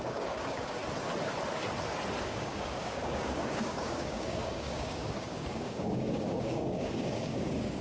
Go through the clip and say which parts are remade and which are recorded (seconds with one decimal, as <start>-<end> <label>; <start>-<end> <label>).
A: 0.0-0.8 remade; 0.8-2.2 recorded; 2.2-7.8 remade